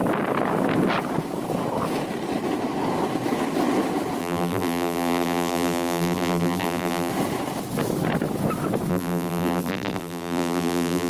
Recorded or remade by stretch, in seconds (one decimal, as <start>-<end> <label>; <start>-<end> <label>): 0.0-4.2 recorded; 4.2-7.1 remade; 7.1-8.9 recorded; 8.9-11.1 remade